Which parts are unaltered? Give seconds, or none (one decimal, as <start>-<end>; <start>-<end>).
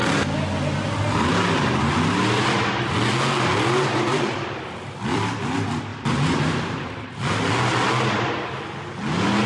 0.0-4.1; 5.4-5.9; 7.2-9.5